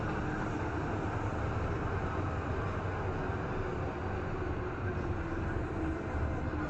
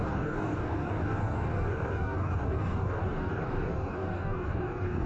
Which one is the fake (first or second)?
second